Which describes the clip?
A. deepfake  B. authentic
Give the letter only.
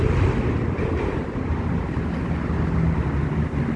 B